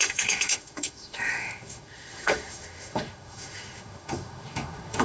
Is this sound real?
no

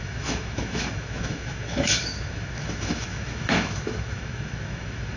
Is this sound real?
no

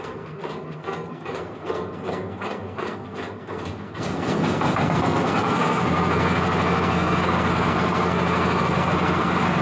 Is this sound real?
no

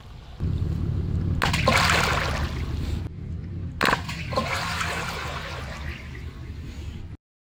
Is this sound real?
yes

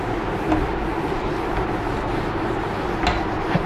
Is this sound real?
yes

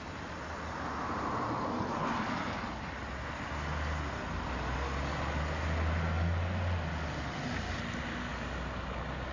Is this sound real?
yes